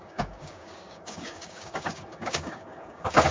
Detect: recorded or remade remade